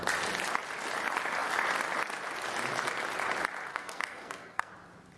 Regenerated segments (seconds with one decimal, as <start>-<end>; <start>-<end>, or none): 3.7-4.7